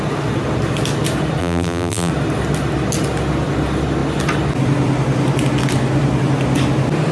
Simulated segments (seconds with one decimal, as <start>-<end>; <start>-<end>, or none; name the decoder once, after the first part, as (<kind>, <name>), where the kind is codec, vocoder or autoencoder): 1.4-2.1 (vocoder, BigVGAN v2)